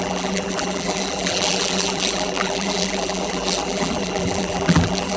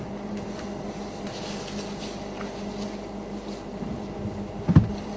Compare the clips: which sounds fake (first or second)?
first